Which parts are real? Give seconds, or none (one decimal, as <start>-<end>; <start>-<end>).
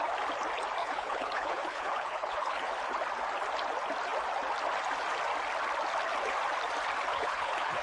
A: 0.0-0.8; 2.7-7.1